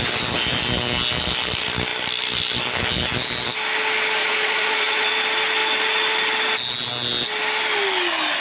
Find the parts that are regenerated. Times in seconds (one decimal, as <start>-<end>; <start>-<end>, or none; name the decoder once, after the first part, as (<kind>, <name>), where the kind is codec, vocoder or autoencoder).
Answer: 4.2-5.1 (vocoder, Vocos)